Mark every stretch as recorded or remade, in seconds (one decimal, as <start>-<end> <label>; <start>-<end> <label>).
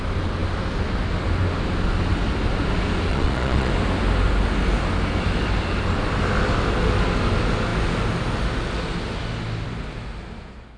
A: 0.0-3.1 recorded; 3.1-3.7 remade; 3.7-10.8 recorded